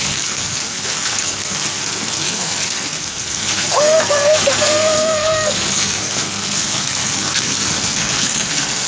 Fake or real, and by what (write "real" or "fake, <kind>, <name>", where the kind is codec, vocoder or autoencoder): fake, codec, SNAC